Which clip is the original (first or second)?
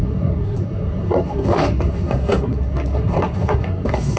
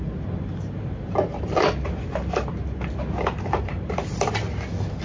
second